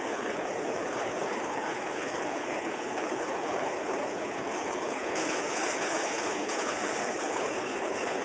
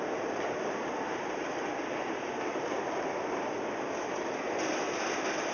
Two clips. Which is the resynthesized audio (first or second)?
first